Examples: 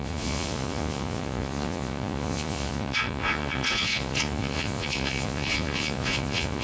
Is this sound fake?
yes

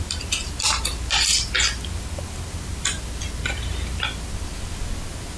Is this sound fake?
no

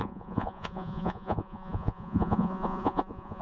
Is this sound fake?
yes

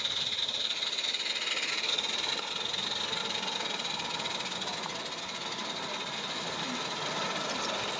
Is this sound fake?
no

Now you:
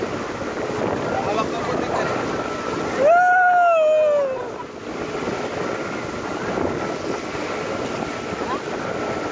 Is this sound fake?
no